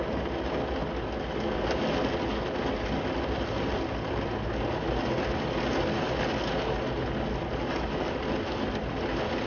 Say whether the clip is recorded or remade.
recorded